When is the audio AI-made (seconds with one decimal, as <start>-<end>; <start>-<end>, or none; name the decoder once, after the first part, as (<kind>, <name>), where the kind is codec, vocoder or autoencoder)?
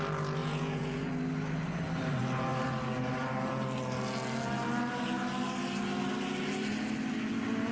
0.4-1.1 (vocoder, Vocos)